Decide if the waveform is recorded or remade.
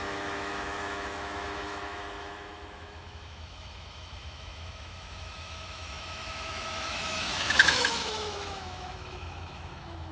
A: remade